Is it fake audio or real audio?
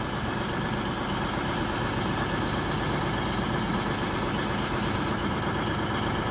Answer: real